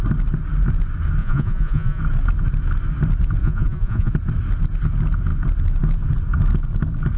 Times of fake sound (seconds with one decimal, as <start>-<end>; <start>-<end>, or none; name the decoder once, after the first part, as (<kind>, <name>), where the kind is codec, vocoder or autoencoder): 1.2-2.0 (vocoder, Vocos); 3.4-4.1